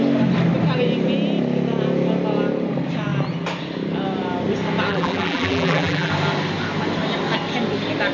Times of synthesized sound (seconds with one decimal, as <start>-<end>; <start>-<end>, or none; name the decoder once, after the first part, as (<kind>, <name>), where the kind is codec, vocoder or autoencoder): 4.9-6.1 (vocoder, BigVGAN v2)